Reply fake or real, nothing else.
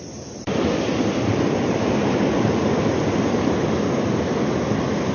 real